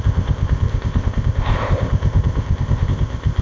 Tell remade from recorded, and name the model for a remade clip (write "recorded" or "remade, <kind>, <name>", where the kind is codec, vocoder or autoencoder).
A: remade, codec, ZipCodec